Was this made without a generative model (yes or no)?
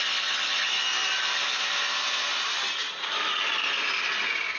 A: yes